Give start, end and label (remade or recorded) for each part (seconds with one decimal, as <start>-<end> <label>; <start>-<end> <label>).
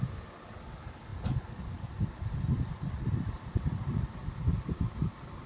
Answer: 0.0-5.5 recorded